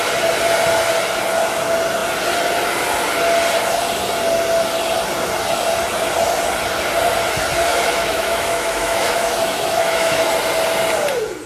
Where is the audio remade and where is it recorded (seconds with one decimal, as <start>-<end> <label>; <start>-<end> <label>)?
0.0-7.7 recorded; 7.7-10.3 remade; 10.3-11.5 recorded